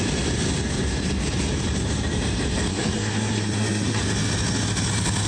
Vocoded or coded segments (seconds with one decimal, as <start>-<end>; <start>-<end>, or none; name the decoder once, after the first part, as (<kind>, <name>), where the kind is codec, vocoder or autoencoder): 2.7-4.0 (codec, SNAC)